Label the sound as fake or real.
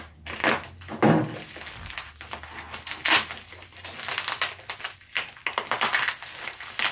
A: real